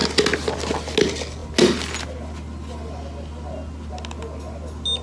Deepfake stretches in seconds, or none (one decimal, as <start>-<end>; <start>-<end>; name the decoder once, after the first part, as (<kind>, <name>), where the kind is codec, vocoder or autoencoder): none